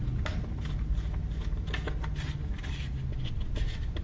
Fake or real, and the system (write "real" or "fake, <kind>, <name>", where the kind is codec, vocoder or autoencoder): real